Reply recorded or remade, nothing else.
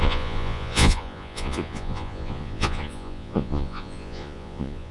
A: remade